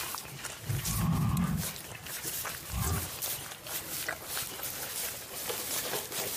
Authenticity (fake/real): real